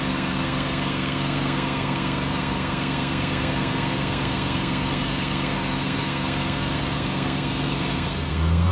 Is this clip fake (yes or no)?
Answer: yes